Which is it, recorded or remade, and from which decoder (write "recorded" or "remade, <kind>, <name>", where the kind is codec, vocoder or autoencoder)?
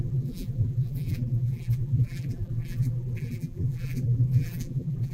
remade, vocoder, BigVGAN v2